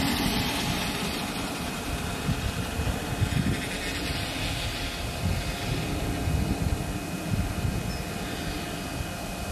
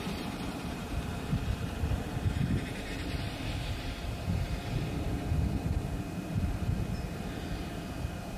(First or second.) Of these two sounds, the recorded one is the first